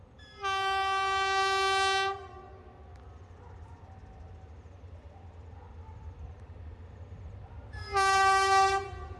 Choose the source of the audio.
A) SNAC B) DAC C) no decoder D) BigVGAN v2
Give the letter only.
C